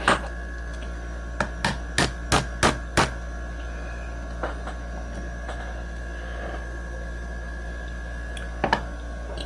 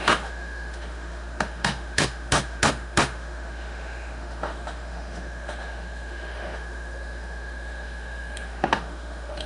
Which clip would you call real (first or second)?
first